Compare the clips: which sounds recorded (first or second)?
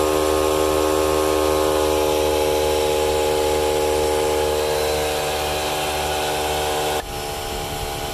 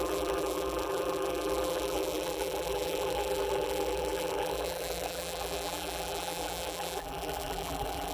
first